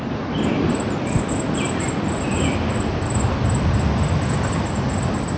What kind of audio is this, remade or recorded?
recorded